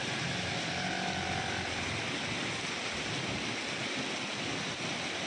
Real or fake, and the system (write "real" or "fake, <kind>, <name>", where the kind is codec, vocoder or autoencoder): real